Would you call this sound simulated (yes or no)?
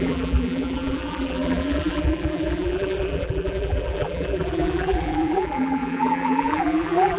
yes